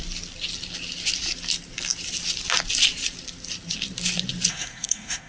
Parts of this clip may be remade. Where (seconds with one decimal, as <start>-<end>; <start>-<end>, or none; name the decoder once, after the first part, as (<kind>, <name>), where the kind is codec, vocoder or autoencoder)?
4.5-5.3 (codec, SNAC)